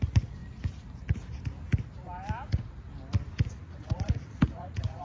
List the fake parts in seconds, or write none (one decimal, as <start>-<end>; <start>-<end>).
0.0-0.4; 2.5-2.9; 3.5-5.0